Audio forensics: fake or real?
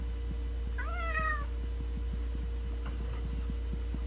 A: real